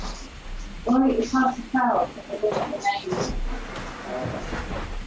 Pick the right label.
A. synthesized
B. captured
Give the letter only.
B